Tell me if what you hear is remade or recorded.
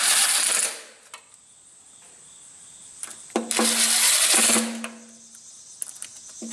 recorded